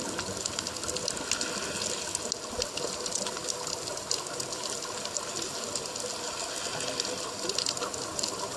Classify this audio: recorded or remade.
recorded